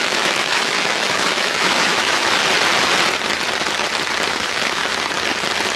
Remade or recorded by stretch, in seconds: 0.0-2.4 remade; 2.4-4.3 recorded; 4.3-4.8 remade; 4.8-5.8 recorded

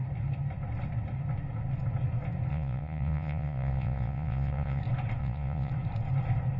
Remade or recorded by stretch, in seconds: 0.0-2.5 recorded; 2.5-4.8 remade; 4.8-5.2 recorded; 5.2-5.7 remade; 5.7-6.6 recorded

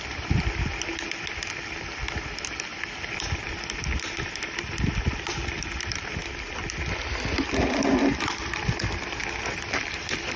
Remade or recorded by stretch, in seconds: 0.0-0.7 remade; 0.7-1.5 recorded; 1.5-6.2 remade; 6.2-8.3 recorded; 8.3-10.4 remade

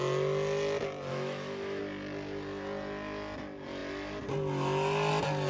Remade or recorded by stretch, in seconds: 0.0-1.1 recorded; 1.1-1.8 remade; 1.8-5.5 recorded

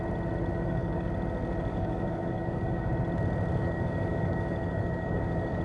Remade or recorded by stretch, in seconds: 0.0-0.5 recorded; 0.5-1.1 remade; 1.1-1.7 recorded; 1.7-2.9 remade; 2.9-3.5 recorded; 3.5-5.6 remade

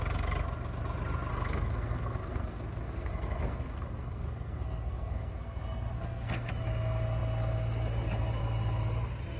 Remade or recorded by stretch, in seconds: 0.0-1.3 recorded; 1.3-6.5 remade; 6.5-9.4 recorded